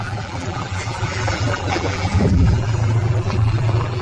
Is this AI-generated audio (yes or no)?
yes